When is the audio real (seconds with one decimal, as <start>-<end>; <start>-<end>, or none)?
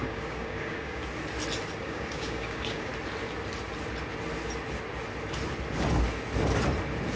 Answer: 1.0-1.8; 2.9-7.2